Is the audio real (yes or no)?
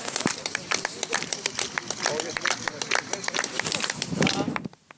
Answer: no